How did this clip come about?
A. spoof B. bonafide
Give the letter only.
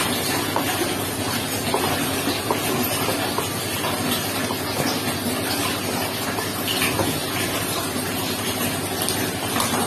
B